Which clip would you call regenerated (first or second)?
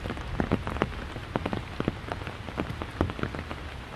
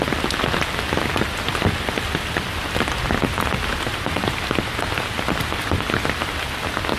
second